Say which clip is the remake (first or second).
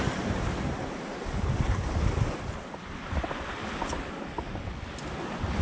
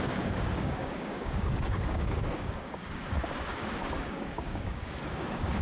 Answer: second